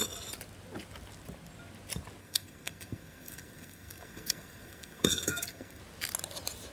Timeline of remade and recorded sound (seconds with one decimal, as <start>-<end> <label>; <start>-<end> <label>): 0.0-2.2 recorded; 2.2-5.8 remade; 5.8-6.7 recorded